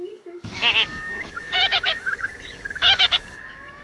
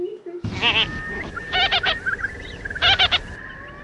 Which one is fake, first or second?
first